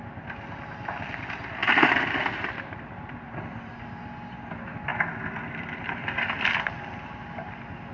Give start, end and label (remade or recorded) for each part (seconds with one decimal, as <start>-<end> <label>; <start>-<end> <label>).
0.0-1.6 recorded; 1.6-3.8 remade; 3.8-7.9 recorded